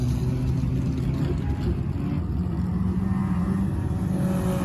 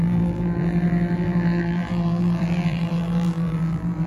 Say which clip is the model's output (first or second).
second